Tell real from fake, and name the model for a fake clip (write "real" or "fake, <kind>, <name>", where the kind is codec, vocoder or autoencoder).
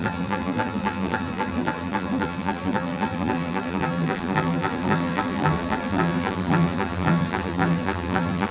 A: fake, vocoder, BigVGAN v2